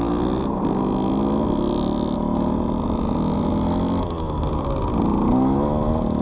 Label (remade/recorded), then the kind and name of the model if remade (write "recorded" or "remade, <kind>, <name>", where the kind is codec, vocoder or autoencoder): recorded